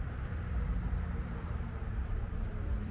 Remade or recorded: remade